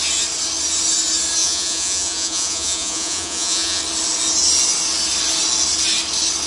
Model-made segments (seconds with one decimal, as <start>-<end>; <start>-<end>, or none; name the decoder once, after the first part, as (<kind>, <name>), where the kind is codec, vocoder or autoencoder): 1.4-3.8 (vocoder, Vocos)

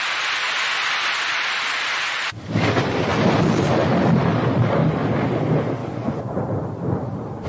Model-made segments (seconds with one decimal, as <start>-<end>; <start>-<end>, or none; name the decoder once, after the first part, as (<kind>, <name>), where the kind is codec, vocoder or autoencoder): 5.8-6.4 (vocoder, Vocos)

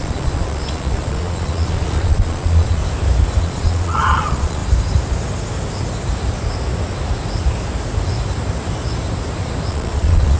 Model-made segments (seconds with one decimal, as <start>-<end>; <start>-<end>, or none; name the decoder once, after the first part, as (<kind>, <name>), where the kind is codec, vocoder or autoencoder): 0.0-2.8 (vocoder, Vocos); 3.4-4.6; 9.7-10.4

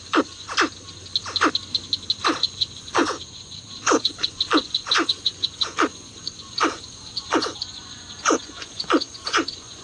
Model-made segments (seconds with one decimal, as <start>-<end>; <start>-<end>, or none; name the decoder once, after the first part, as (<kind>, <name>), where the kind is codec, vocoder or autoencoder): 0.0-0.5 (vocoder, Vocos); 2.4-9.8